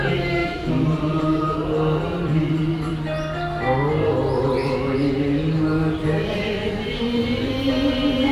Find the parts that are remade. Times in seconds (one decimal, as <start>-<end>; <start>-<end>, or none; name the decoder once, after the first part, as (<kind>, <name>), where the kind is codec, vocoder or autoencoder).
0.4-3.0 (vocoder, BigVGAN v2)